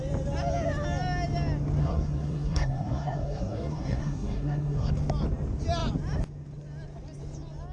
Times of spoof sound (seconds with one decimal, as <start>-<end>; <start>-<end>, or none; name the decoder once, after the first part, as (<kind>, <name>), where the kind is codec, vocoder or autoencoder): 1.8-4.9 (codec, SNAC)